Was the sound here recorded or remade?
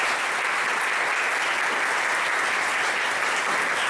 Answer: recorded